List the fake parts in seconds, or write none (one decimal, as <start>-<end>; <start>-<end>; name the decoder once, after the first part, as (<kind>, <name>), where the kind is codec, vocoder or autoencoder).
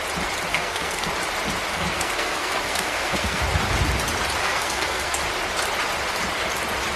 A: 0.5-1.1 (codec, SNAC); 1.7-3.4; 4.4-5.2